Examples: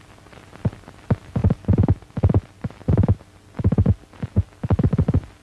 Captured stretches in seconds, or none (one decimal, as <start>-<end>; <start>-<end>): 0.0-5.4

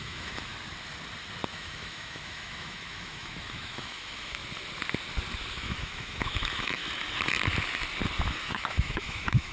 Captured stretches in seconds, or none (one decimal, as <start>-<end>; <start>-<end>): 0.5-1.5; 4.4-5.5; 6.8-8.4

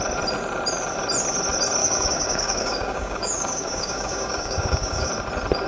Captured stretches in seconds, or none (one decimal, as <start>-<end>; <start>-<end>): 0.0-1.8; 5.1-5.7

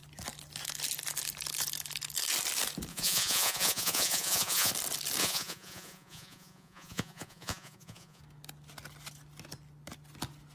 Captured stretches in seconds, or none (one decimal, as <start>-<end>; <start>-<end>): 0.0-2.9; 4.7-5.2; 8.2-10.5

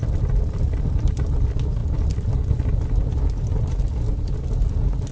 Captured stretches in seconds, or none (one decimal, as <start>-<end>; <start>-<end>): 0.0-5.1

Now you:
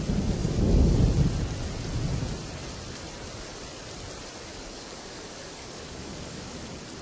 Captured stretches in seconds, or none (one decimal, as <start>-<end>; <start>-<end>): 0.0-0.4; 1.0-4.5; 6.6-7.0